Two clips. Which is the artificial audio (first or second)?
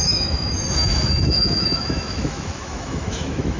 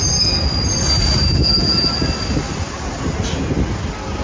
first